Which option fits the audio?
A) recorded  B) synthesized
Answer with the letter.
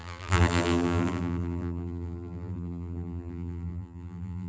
B